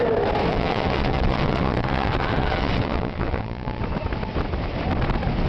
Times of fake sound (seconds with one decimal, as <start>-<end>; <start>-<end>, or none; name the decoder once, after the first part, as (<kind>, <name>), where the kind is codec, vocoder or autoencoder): 0.5-3.8 (vocoder, WaveNeXt)